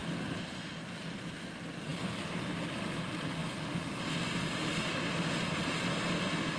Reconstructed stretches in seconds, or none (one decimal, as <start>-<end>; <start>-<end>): none